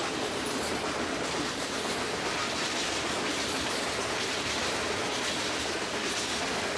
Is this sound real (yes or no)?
yes